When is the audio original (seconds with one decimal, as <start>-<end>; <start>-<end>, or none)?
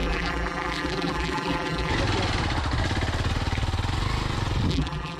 1.9-4.7